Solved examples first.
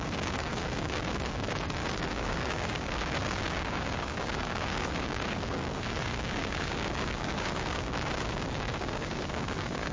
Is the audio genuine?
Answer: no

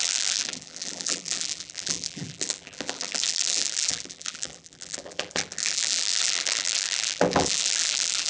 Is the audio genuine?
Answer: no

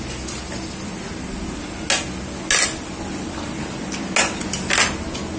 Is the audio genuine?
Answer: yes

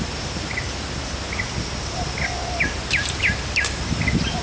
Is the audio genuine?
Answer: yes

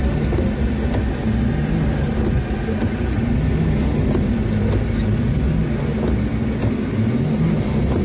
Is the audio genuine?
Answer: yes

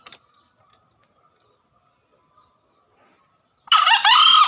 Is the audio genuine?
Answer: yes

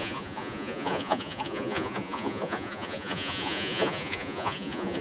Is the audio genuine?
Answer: no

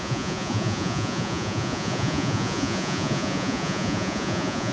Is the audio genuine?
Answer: no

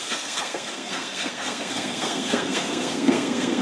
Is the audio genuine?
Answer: no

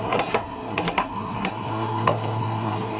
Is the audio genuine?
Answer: no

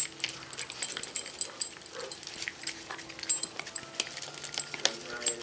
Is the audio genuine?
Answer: yes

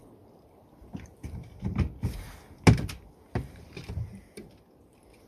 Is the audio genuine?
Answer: yes